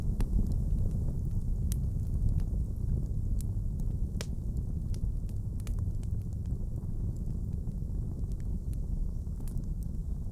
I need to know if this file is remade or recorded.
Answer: recorded